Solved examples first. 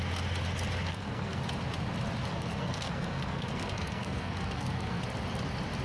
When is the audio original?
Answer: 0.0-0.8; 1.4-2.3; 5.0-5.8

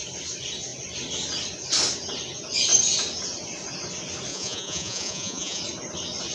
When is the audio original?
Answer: 0.0-4.3; 5.6-6.3

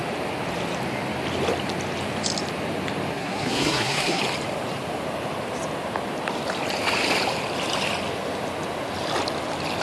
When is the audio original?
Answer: 0.0-3.1; 4.2-9.8

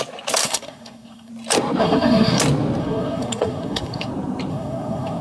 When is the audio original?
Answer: 0.0-0.4; 1.3-1.8; 2.4-2.8; 4.1-4.5

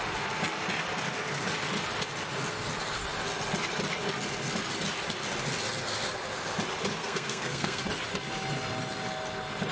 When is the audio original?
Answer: 0.0-7.0; 7.8-9.7

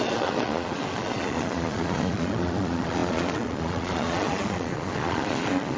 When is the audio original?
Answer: none

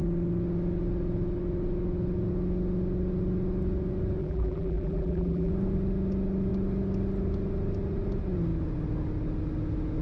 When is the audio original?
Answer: 0.0-4.2; 5.5-10.0